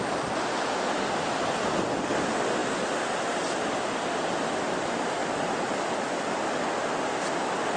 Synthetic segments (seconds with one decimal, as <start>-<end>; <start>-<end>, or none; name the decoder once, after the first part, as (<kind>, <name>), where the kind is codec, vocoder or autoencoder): none